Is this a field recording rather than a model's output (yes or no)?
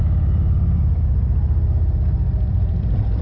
no